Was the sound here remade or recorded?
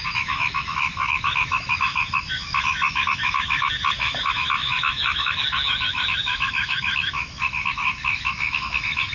remade